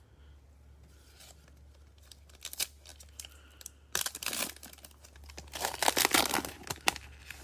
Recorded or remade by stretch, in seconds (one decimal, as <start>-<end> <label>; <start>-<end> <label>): 0.0-7.4 recorded